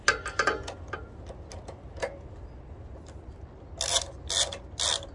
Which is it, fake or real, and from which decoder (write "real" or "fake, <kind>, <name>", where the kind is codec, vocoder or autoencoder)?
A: real